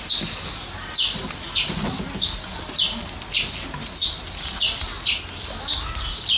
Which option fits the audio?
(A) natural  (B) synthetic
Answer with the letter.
A